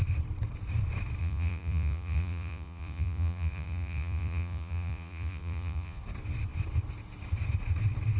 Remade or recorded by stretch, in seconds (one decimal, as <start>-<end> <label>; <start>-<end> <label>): 0.0-1.2 recorded; 1.2-6.0 remade; 6.0-8.2 recorded